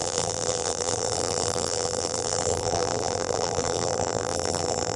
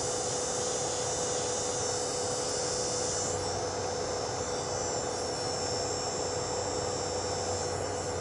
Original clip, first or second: second